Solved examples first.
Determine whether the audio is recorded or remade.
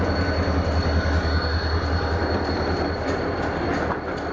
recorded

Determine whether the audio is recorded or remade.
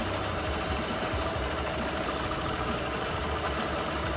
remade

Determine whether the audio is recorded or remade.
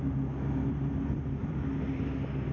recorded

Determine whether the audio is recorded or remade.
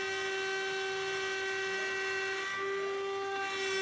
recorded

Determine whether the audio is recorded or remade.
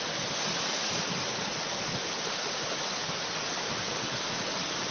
recorded